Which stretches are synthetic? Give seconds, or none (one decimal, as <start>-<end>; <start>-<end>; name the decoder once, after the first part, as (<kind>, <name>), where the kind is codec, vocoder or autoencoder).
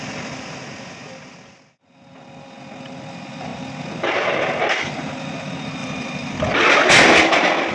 none